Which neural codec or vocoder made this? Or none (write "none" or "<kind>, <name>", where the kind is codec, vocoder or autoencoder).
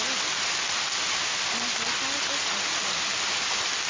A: none